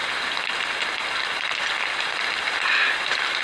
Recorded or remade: recorded